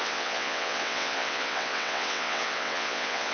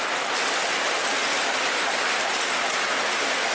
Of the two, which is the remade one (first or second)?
first